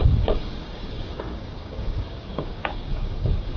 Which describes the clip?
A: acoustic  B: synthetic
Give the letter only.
B